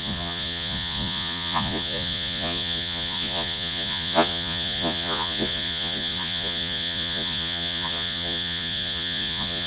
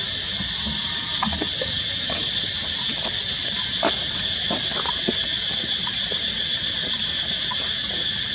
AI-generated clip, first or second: first